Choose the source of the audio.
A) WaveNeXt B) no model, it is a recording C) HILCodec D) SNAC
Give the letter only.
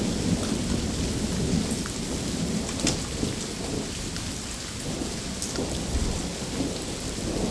B